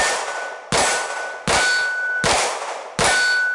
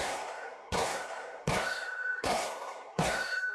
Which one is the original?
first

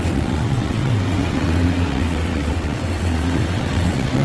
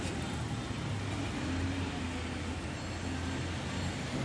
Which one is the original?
second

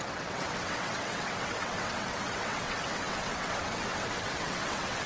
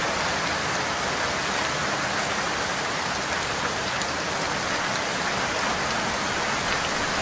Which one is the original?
second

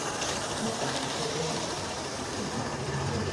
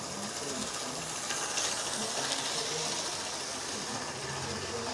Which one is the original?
second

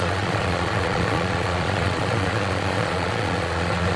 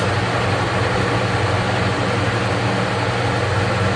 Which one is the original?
second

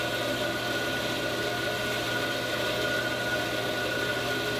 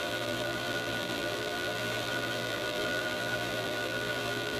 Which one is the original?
first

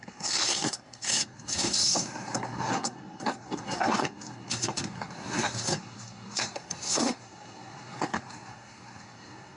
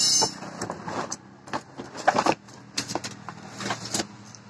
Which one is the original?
second